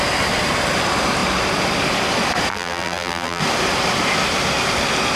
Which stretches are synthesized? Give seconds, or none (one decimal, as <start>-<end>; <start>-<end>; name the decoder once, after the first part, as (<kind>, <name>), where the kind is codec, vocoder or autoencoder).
2.5-3.4 (vocoder, BigVGAN v2)